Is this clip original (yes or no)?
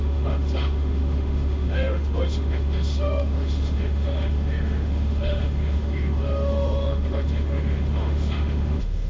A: no